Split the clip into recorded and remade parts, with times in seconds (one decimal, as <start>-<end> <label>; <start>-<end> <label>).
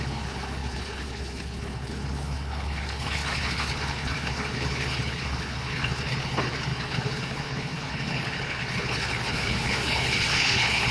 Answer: 0.0-10.9 remade